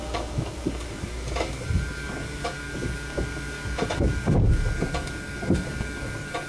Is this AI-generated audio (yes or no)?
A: yes